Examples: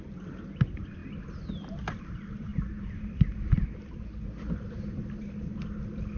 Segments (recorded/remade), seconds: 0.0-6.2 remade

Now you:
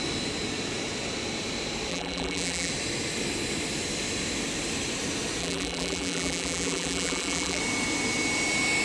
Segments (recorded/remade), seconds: 0.0-1.9 recorded; 1.9-2.7 remade; 2.7-5.4 recorded; 5.4-7.6 remade; 7.6-8.8 recorded